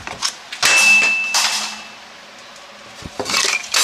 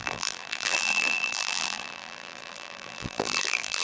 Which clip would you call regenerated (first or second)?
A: second